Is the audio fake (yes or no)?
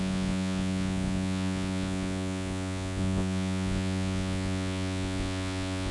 yes